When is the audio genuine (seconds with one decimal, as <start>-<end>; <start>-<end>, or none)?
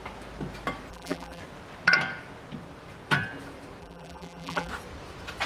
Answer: 0.0-0.9; 1.4-3.8; 4.7-5.5